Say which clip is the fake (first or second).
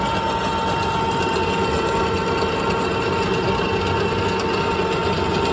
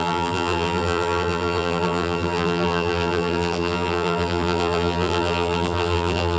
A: second